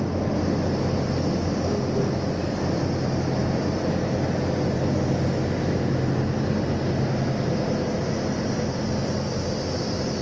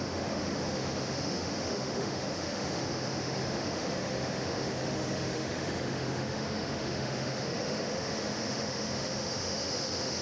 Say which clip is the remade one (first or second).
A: second